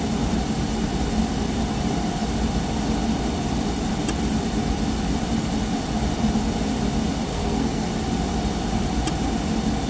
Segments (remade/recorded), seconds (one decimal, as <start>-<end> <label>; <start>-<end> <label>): 0.0-7.3 recorded; 7.3-7.9 remade; 7.9-9.9 recorded